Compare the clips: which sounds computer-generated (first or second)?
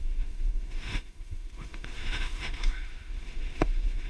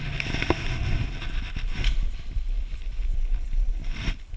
first